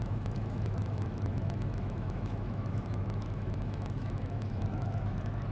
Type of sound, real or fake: fake